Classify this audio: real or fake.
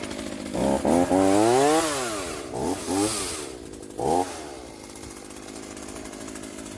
real